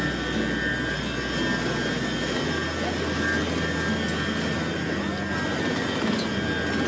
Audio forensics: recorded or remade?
recorded